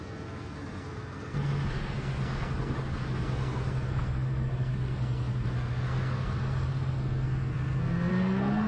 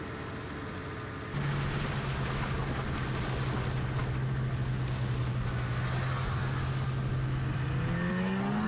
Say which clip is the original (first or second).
second